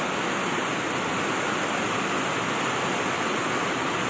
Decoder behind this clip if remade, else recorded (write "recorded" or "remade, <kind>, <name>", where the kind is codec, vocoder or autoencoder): recorded